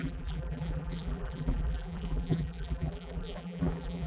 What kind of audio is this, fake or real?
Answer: fake